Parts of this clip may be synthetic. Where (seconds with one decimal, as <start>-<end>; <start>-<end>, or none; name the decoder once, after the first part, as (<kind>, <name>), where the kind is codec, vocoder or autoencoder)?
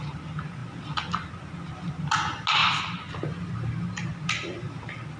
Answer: none